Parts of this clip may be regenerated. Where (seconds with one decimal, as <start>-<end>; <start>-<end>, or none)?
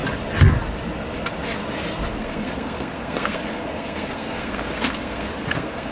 2.1-5.9